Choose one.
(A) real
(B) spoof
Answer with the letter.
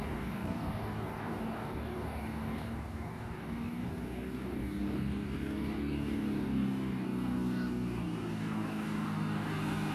B